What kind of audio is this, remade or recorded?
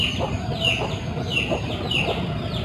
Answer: recorded